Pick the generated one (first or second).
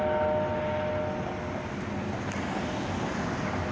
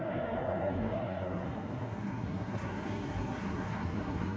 second